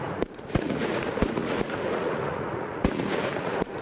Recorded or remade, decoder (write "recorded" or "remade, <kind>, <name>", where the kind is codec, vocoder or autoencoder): remade, vocoder, Vocos